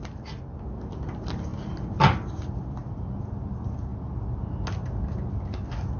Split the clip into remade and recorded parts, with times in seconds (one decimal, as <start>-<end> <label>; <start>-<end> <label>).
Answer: 0.0-6.0 recorded